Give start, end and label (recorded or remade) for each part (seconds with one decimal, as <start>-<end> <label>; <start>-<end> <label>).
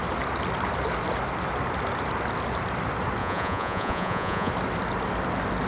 0.0-3.2 recorded; 3.2-4.5 remade; 4.5-5.7 recorded